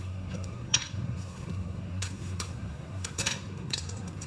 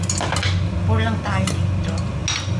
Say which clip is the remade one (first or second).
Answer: first